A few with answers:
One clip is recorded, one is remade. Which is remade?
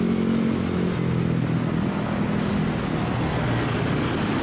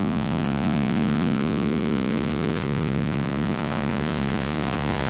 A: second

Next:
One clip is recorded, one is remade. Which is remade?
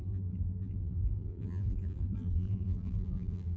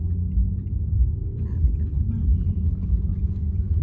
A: first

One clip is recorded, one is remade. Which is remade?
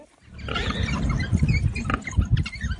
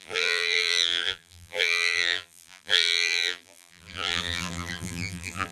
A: second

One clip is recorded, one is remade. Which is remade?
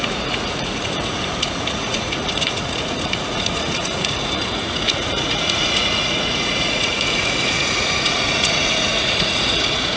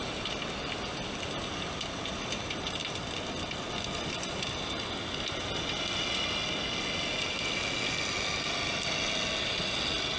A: first